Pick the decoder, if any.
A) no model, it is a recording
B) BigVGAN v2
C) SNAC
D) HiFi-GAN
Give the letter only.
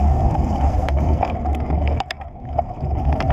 C